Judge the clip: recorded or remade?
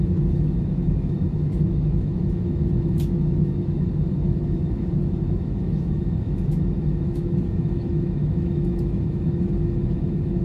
remade